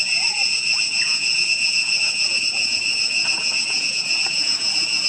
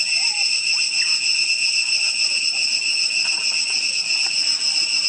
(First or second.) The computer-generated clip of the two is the first